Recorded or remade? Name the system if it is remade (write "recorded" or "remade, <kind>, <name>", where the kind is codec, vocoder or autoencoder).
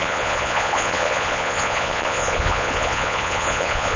remade, vocoder, Vocos